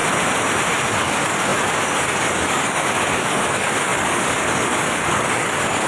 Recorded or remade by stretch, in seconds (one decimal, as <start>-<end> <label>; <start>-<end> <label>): 0.0-0.9 recorded; 0.9-5.9 remade